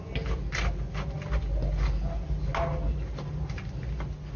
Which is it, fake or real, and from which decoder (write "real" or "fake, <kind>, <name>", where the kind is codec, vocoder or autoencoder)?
real